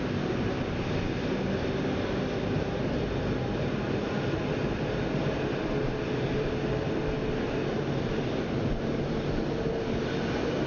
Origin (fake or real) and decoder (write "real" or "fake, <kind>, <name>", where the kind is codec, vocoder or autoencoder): real